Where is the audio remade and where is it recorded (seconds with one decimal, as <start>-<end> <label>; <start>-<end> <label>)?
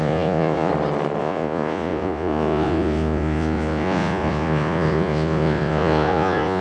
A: 0.0-0.7 remade; 0.7-1.2 recorded; 1.2-6.6 remade